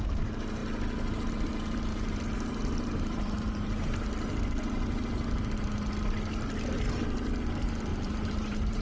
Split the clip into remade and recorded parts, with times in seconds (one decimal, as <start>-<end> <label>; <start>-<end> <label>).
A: 0.0-1.9 recorded; 1.9-4.1 remade; 4.1-7.9 recorded; 7.9-8.8 remade